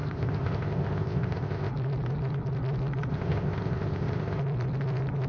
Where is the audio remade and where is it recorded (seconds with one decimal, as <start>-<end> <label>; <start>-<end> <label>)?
0.0-1.7 remade; 1.7-3.1 recorded; 3.1-4.4 remade; 4.4-5.3 recorded